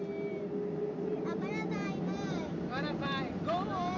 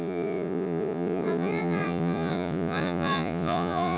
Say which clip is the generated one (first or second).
second